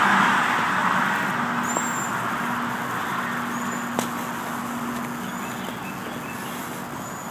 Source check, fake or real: real